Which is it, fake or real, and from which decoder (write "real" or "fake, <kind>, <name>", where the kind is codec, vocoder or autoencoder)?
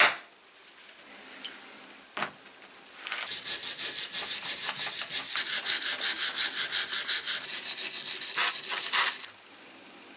real